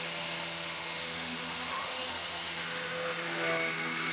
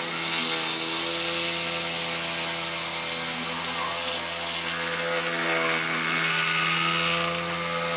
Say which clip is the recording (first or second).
second